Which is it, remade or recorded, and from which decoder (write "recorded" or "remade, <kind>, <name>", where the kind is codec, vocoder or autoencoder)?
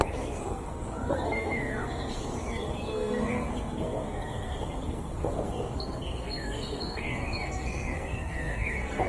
remade, codec, SNAC